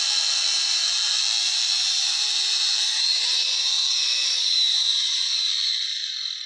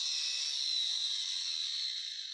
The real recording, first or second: second